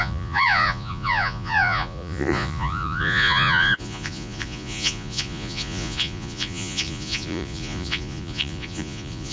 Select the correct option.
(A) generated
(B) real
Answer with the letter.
A